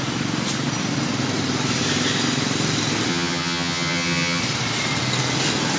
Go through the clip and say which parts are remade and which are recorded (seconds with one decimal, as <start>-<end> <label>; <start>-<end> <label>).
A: 0.0-3.1 recorded; 3.1-4.4 remade; 4.4-5.8 recorded